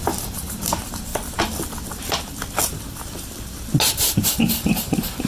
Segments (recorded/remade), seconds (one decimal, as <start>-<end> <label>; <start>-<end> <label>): 0.0-1.1 remade; 1.1-4.3 recorded; 4.3-5.3 remade